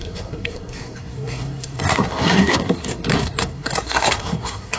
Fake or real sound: fake